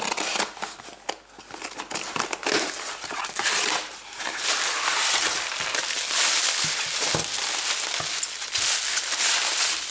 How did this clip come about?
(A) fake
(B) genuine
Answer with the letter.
B